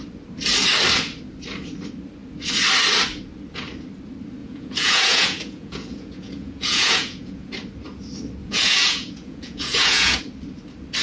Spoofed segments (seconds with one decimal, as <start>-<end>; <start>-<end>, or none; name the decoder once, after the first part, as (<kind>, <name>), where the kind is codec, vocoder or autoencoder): 4.4-7.5 (vocoder, Vocos); 8.4-10.2

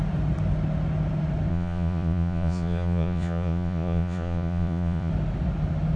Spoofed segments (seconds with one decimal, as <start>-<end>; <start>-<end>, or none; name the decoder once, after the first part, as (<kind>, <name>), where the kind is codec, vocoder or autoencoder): 1.5-5.1 (vocoder, Vocos)